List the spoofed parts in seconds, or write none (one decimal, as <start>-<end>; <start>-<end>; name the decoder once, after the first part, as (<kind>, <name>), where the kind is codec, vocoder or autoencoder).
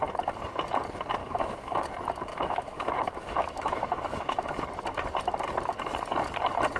1.2-1.9 (autoencoder, DAC-VAE); 2.3-4.5